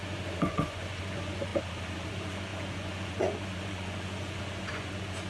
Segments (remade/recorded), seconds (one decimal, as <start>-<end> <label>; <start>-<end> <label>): 0.0-1.5 remade; 1.5-2.1 recorded; 2.1-5.3 remade